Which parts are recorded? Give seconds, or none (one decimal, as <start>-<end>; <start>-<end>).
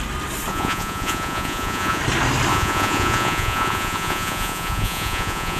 0.0-0.5; 2.0-2.5